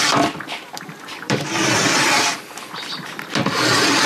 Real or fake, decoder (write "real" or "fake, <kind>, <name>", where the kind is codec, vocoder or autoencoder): fake, vocoder, BigVGAN v2